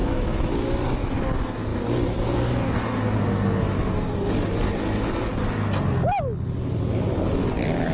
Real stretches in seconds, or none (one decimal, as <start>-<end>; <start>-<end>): 0.5-7.9